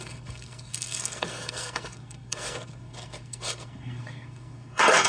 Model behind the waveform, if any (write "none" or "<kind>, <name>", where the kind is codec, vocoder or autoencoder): codec, SNAC